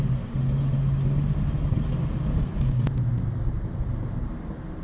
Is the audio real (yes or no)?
yes